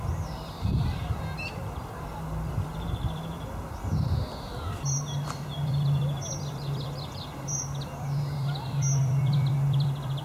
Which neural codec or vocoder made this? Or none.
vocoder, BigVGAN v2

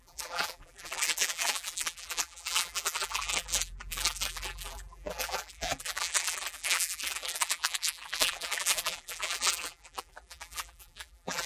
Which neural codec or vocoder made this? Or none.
vocoder, BigVGAN v2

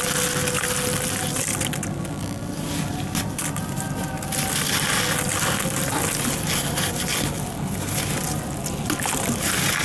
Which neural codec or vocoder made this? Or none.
none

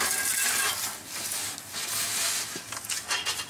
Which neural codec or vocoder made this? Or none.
none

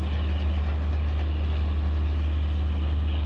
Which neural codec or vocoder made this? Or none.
none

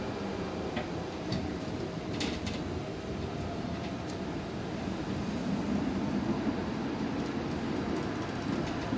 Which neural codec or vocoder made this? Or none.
none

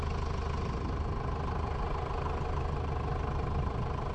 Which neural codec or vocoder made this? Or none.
none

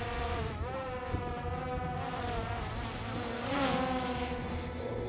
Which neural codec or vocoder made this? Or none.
vocoder, BigVGAN v2